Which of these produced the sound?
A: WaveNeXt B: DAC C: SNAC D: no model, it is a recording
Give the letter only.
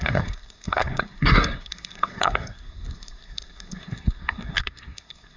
C